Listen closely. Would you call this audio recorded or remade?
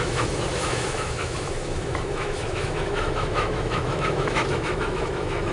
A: remade